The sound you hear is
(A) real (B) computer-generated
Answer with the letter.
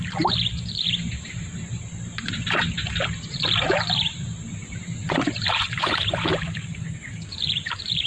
B